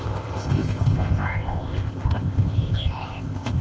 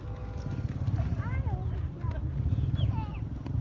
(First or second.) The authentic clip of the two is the second